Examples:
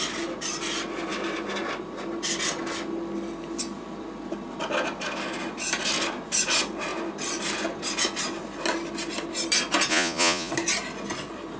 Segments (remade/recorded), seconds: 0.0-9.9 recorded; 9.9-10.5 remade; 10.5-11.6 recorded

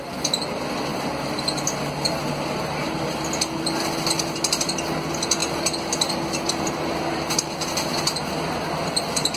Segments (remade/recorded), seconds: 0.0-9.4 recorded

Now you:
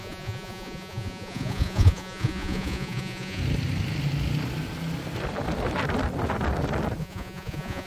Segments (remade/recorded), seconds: 0.0-3.4 remade; 3.4-7.0 recorded; 7.0-7.9 remade

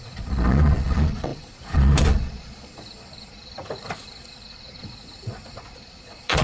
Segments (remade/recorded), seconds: 0.0-6.4 remade